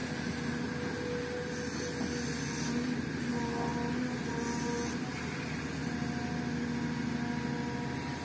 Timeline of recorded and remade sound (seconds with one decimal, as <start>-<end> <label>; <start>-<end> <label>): 0.0-8.2 recorded